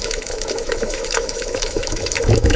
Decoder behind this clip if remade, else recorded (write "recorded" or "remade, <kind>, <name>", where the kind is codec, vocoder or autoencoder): remade, autoencoder, DAC-VAE